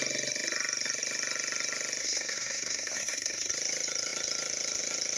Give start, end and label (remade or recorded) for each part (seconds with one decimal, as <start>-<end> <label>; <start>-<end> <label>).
0.0-2.0 recorded; 2.0-3.5 remade; 3.5-5.2 recorded